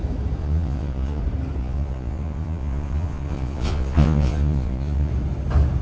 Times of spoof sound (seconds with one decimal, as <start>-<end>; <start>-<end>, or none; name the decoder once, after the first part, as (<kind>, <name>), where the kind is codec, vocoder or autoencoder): 0.4-1.2 (vocoder, Vocos); 1.6-5.1